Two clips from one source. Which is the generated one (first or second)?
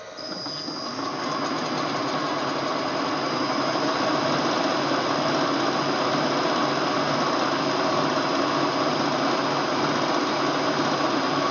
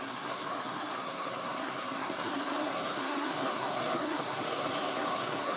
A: second